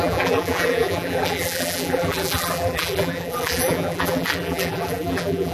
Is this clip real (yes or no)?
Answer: no